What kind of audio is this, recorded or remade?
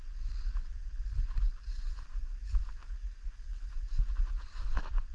remade